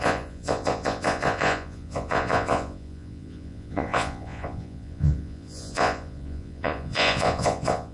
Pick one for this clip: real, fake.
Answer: fake